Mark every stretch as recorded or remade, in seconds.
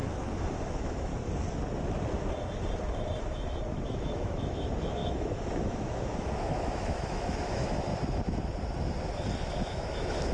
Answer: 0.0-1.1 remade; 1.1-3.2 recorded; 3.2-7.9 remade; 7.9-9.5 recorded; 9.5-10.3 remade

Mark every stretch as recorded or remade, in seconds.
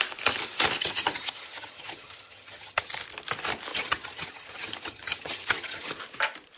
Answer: 0.0-0.8 recorded; 0.8-2.9 remade; 2.9-3.7 recorded; 3.7-5.9 remade; 5.9-6.6 recorded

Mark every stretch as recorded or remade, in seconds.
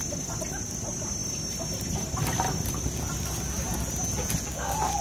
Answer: 0.0-5.0 recorded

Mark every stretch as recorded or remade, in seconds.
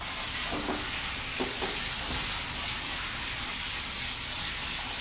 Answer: 0.0-1.3 recorded; 1.3-1.9 remade; 1.9-5.0 recorded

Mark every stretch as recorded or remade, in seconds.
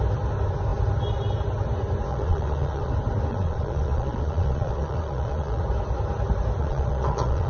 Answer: 0.0-2.1 recorded; 2.1-2.9 remade; 2.9-3.3 recorded; 3.3-5.6 remade; 5.6-6.6 recorded; 6.6-7.5 remade